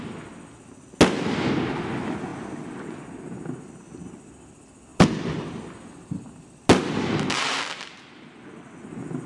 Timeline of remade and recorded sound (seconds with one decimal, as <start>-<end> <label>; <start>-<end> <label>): 0.0-9.3 recorded